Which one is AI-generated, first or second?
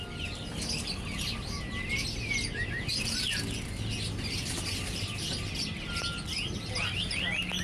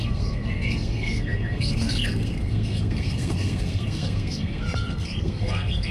second